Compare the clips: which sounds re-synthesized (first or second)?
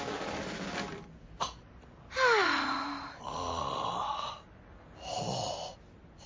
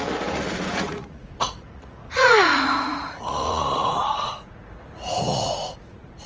second